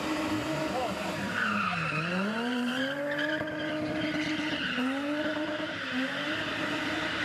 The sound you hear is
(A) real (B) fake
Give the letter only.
B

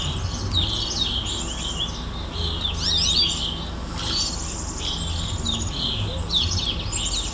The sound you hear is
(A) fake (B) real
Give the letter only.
B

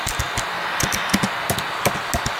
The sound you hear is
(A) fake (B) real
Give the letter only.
B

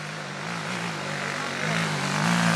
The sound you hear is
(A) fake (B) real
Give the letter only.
B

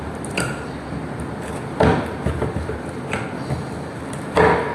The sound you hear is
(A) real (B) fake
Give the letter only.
A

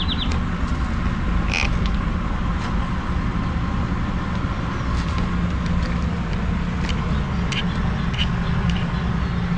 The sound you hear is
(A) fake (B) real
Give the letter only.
B